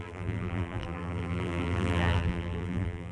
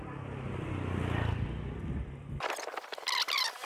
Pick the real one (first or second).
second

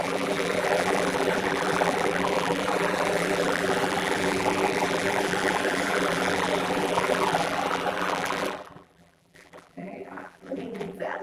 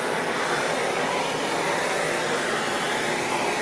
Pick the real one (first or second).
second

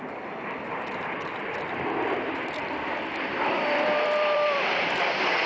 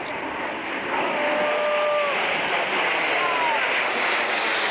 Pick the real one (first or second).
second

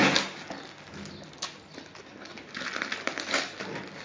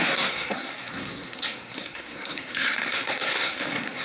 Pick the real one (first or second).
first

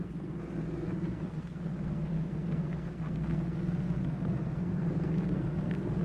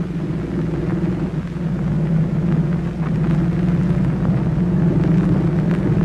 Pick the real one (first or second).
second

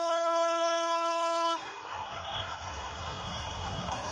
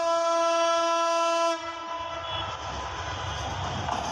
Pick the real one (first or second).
second